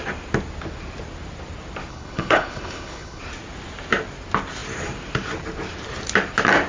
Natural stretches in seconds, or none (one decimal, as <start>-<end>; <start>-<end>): 0.0-1.9; 3.2-6.7